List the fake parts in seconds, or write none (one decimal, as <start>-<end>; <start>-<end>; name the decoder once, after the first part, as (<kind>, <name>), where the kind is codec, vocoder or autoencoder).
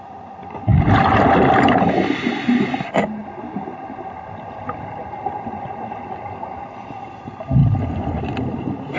0.7-1.4 (vocoder, BigVGAN v2)